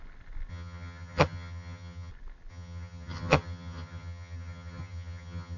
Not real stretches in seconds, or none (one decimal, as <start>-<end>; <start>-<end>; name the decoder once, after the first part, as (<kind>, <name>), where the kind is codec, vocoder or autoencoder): 0.5-2.1 (vocoder, HiFi-GAN); 2.5-5.6